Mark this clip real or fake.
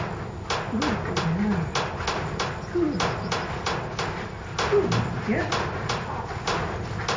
real